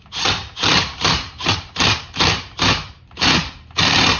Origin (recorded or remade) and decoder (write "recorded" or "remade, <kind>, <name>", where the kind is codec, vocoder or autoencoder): remade, vocoder, BigVGAN v2